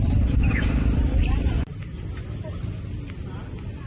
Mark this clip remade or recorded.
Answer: recorded